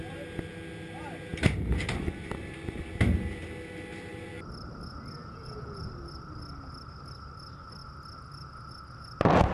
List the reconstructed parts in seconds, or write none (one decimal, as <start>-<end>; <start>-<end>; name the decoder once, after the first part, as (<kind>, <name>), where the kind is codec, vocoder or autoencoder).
5.2-5.9 (vocoder, Vocos)